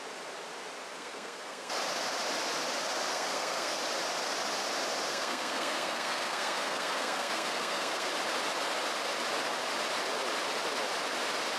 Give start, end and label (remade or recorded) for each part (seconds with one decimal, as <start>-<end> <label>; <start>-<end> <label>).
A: 0.0-0.9 recorded; 0.9-1.7 remade; 1.7-3.1 recorded; 3.1-3.8 remade; 3.8-5.1 recorded; 5.1-8.1 remade; 8.1-11.6 recorded